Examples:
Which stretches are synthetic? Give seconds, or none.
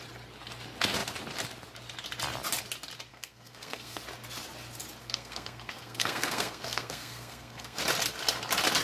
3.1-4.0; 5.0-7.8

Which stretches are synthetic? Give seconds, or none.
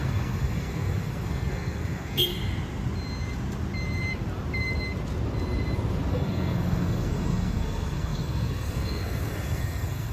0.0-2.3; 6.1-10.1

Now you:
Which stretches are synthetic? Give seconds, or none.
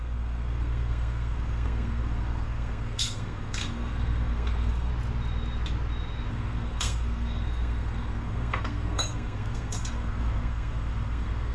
0.0-4.9; 6.3-11.5